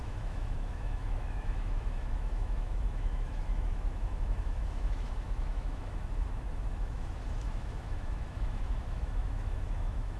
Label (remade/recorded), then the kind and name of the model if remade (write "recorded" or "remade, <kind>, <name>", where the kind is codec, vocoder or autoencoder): remade, autoencoder, DAC-VAE